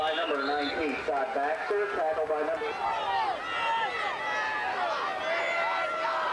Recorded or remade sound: recorded